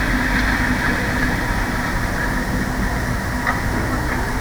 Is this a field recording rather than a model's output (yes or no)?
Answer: yes